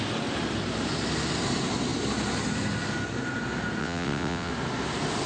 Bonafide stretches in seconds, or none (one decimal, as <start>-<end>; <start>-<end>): 0.0-3.8; 4.5-5.3